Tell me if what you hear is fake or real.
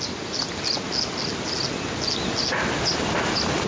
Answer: real